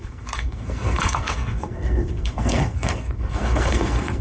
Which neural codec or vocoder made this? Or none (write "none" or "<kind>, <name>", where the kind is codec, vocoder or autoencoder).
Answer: codec, SNAC